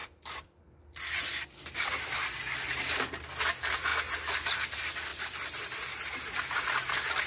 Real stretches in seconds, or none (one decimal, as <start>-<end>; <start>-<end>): 0.6-1.3; 3.3-5.1; 6.2-7.3